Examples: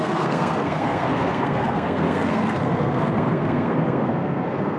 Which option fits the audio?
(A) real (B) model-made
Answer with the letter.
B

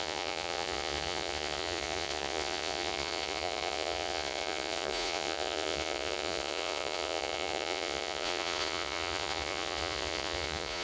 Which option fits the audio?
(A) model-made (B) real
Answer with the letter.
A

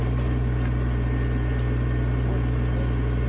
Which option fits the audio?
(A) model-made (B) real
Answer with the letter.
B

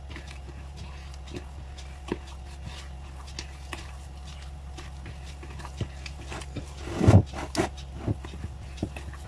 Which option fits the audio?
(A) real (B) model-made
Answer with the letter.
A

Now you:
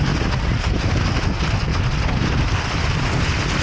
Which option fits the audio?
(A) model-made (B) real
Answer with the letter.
B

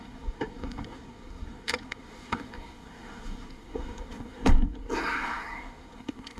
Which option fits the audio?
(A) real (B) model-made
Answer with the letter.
B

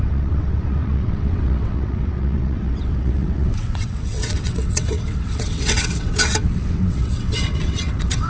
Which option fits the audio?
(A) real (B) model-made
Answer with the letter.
B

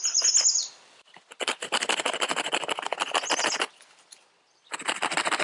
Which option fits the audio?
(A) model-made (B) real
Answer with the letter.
B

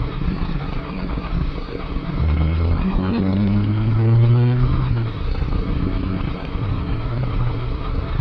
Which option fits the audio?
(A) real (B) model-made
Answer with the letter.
B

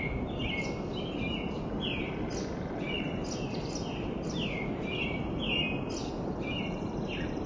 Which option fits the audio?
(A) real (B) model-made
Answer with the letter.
A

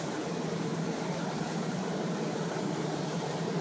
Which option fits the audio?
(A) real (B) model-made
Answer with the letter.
B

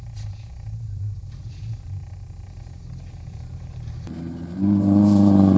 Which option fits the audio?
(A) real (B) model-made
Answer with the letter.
B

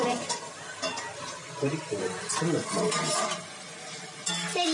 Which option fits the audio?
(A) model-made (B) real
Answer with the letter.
B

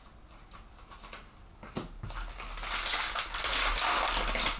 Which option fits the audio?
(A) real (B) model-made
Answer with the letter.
A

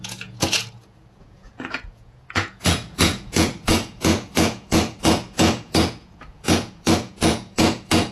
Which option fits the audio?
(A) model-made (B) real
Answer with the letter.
A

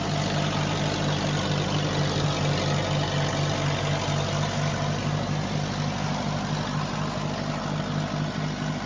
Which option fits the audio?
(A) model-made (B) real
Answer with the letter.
B